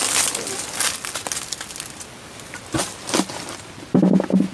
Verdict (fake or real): real